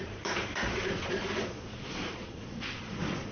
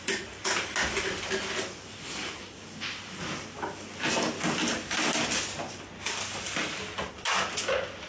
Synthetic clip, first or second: first